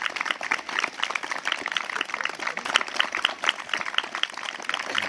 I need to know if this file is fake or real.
real